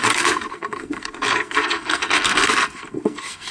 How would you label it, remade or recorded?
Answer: remade